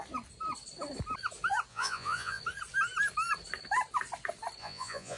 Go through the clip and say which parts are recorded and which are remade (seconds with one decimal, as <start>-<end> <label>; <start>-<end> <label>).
0.0-1.7 recorded; 1.7-2.4 remade; 2.4-4.6 recorded; 4.6-5.2 remade